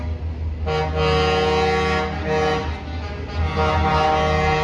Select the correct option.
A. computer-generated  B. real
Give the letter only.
B